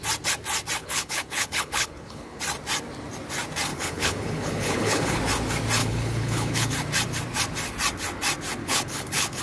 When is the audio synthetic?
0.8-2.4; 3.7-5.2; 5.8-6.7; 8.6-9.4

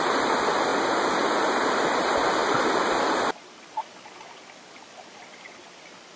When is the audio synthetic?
2.4-6.2

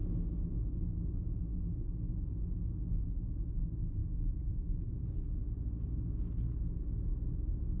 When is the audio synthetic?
none

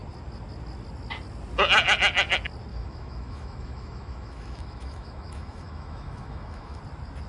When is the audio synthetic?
2.7-6.8

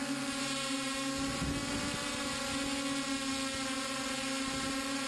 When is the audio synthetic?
none

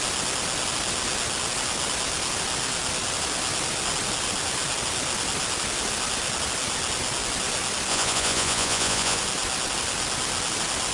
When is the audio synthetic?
7.9-9.2

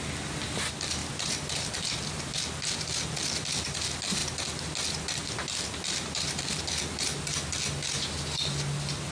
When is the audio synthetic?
none